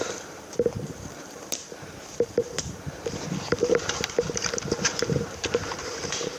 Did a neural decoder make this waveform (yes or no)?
yes